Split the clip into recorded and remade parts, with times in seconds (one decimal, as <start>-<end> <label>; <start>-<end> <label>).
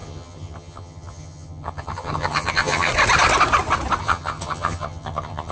0.0-2.9 remade; 2.9-4.0 recorded; 4.0-5.5 remade